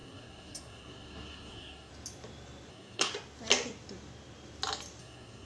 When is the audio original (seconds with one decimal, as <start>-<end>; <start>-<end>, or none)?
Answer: 1.9-2.7; 3.1-5.0